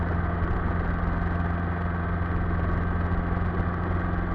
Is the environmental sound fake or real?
real